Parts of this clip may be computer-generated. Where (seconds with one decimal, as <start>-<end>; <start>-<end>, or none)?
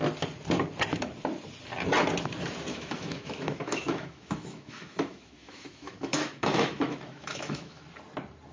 2.7-7.8